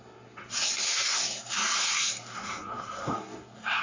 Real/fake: fake